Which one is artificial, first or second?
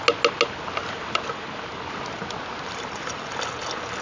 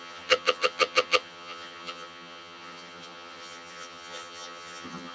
second